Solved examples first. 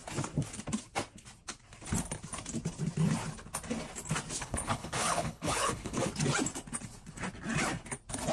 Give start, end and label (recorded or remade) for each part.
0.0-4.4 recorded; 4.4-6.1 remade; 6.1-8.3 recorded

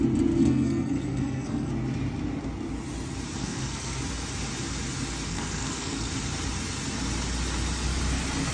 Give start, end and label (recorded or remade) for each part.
0.0-0.4 recorded; 0.4-1.7 remade; 1.7-3.4 recorded; 3.4-4.0 remade; 4.0-5.3 recorded; 5.3-6.1 remade; 6.1-8.5 recorded